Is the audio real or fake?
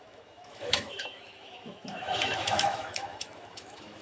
fake